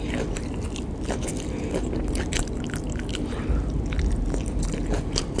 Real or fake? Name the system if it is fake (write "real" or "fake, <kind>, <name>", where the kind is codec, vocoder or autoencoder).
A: real